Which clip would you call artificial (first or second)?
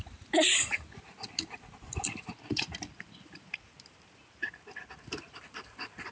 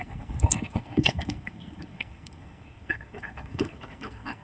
second